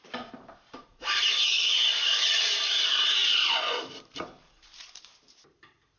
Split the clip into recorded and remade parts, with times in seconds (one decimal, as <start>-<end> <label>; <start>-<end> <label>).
0.0-3.2 remade; 3.2-3.8 recorded; 3.8-6.0 remade